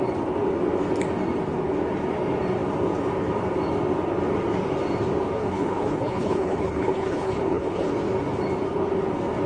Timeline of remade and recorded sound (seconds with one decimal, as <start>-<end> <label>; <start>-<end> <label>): 0.0-5.4 recorded; 5.4-7.9 remade; 7.9-9.5 recorded